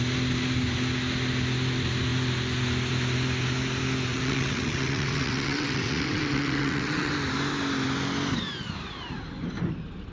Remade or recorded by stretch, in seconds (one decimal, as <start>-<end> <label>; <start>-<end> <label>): 0.0-4.1 recorded; 4.1-7.1 remade; 7.1-10.1 recorded